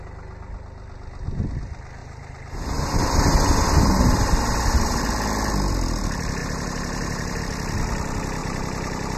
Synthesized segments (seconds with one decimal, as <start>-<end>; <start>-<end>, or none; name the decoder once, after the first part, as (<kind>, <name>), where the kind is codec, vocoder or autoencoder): 2.0-5.0 (vocoder, BigVGAN v2); 6.4-7.4; 8.4-9.2